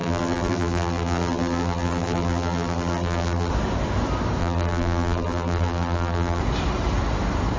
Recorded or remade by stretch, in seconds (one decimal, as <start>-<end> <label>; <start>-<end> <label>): 0.0-3.5 remade; 3.5-4.4 recorded; 4.4-6.4 remade; 6.4-7.6 recorded